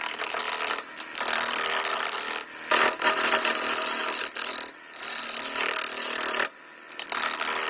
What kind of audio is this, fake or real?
real